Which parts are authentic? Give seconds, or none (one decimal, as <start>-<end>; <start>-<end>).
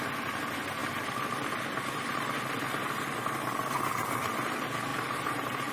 0.0-4.9